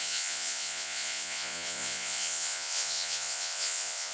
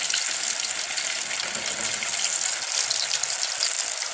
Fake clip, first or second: first